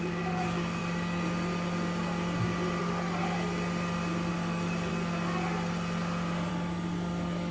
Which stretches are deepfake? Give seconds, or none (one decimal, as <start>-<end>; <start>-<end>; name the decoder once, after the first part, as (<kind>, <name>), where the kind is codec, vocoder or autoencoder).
0.0-0.8 (codec, DAC); 2.8-3.2; 4.3-4.9; 6.5-7.5